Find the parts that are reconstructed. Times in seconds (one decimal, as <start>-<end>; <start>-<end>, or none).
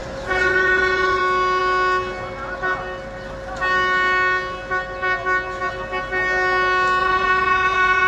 0.0-1.2; 7.0-8.1